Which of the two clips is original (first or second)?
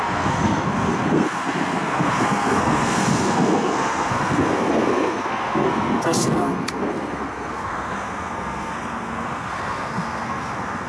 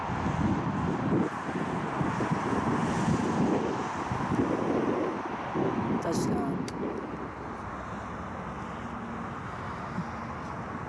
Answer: second